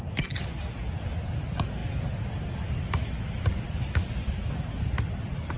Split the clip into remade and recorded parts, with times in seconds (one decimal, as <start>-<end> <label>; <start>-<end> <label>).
0.0-5.6 recorded